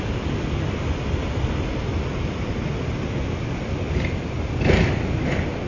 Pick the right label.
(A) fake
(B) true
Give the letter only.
B